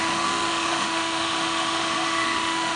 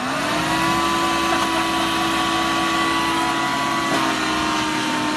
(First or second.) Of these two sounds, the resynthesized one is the first